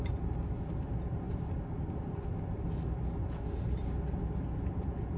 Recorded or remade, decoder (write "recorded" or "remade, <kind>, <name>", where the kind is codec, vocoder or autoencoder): recorded